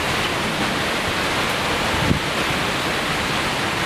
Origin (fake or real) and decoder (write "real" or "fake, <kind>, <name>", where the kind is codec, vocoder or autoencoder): real